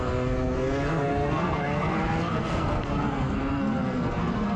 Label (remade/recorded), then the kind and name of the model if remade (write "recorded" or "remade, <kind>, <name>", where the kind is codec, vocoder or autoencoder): remade, codec, SNAC